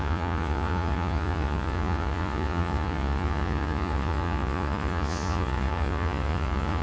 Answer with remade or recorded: remade